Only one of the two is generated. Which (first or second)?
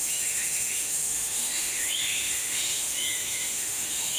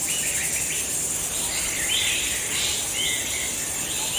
first